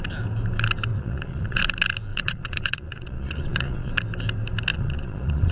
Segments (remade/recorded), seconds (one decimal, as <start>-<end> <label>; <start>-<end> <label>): 0.0-0.9 recorded; 0.9-1.6 remade; 1.6-2.1 recorded; 2.1-3.9 remade; 3.9-4.7 recorded; 4.7-5.5 remade